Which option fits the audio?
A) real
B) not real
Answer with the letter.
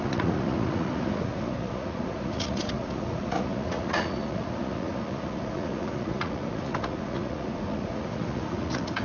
B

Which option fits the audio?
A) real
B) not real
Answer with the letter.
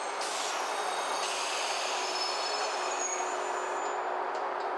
A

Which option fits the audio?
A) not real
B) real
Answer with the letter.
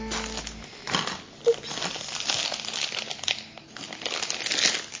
B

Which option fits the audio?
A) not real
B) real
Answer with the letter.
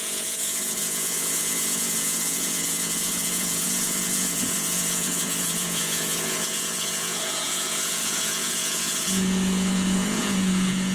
A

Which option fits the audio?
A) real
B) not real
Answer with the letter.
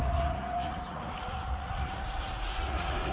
B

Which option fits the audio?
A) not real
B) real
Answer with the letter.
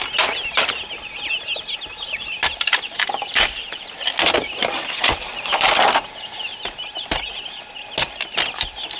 B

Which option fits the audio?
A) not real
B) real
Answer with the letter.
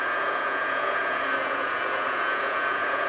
A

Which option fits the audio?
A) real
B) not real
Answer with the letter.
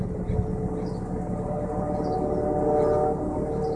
A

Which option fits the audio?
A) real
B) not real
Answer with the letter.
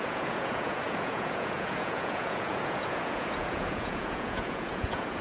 B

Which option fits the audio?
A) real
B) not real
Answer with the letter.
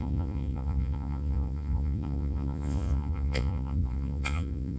B